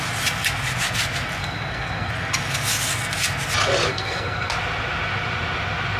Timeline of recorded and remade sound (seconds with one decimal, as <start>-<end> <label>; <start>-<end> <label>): 0.0-1.4 recorded; 1.4-2.1 remade; 2.1-3.9 recorded; 3.9-4.5 remade; 4.5-6.0 recorded